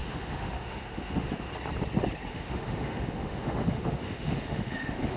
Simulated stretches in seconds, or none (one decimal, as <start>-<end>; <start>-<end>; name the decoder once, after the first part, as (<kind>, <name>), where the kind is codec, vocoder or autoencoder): 0.0-1.5 (autoencoder, DAC-VAE); 2.3-5.2

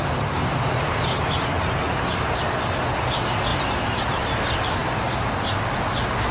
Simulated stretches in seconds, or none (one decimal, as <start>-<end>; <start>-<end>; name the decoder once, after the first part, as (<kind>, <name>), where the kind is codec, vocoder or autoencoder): 0.4-2.4 (vocoder, BigVGAN v2); 3.5-4.0

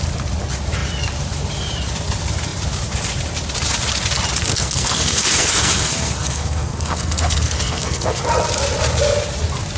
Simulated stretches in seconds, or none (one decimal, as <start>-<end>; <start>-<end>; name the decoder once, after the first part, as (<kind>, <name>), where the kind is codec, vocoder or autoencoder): 4.5-8.2 (codec, SNAC)

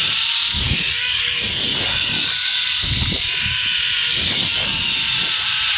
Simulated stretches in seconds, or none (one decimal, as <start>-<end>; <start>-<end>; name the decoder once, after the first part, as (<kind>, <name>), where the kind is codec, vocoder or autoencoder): 0.5-2.7 (codec, DAC); 4.1-4.8

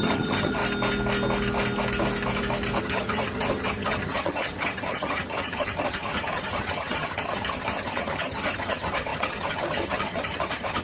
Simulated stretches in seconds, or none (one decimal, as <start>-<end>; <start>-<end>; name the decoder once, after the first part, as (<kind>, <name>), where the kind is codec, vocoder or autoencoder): 0.0-0.6 (vocoder, HiFi-GAN); 2.8-10.8